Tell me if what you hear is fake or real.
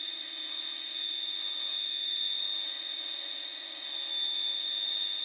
fake